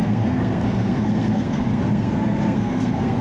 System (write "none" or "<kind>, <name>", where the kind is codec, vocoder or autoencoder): codec, SNAC